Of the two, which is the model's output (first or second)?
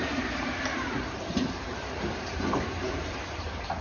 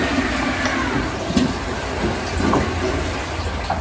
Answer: first